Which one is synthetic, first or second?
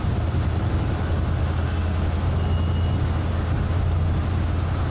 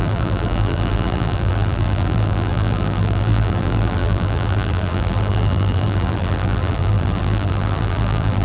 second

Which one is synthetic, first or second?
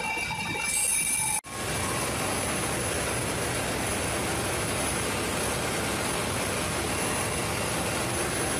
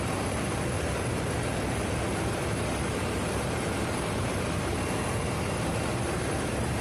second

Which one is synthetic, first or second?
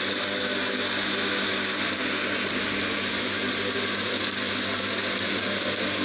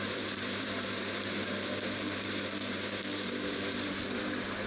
second